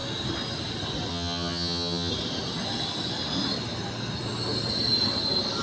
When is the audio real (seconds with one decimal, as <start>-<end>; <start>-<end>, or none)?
0.0-1.1; 2.1-5.6